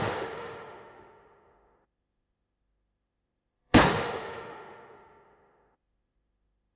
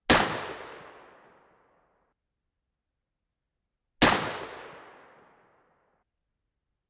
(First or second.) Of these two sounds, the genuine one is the second